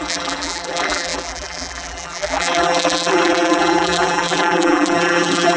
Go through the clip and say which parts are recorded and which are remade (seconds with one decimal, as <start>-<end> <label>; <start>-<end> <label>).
0.0-5.6 remade